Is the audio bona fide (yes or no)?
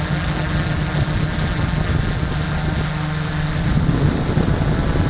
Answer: yes